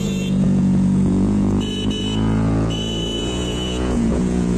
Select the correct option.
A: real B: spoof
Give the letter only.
B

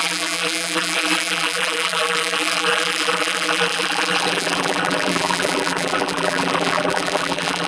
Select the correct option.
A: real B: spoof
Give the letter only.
B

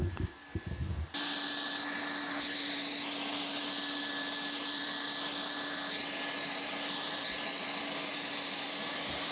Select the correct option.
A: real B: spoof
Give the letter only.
A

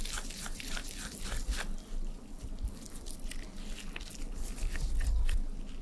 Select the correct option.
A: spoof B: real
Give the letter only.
B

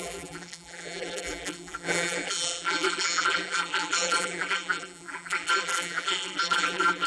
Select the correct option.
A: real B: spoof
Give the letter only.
B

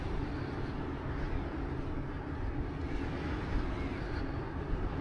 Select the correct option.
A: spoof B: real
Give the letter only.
B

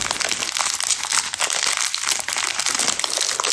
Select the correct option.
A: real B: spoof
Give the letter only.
A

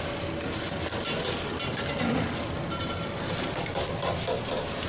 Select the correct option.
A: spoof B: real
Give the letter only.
B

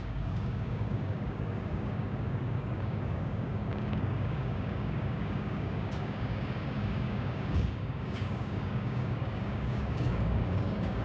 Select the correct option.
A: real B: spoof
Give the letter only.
B